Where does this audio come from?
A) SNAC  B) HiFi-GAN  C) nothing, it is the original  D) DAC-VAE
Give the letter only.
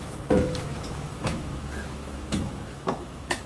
D